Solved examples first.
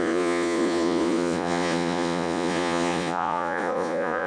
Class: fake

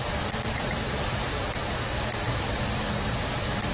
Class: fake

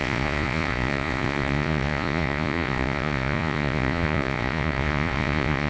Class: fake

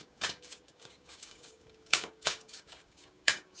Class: fake